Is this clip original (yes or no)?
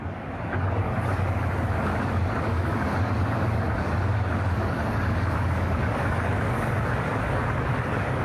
no